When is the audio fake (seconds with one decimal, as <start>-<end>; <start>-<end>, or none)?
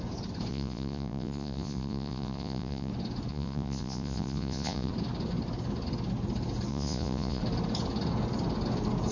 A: 0.5-2.9; 3.3-4.9; 6.7-7.4